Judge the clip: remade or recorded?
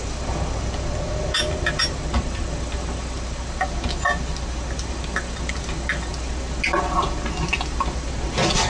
recorded